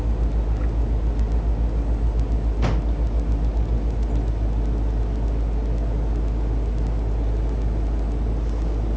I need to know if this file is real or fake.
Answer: real